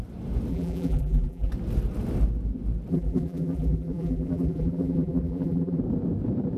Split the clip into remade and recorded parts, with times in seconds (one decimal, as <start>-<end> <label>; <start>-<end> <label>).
0.0-0.5 recorded; 0.5-1.5 remade; 1.5-2.9 recorded; 2.9-5.8 remade; 5.8-6.6 recorded